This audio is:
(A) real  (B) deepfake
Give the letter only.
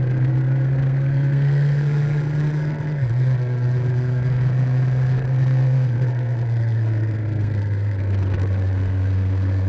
B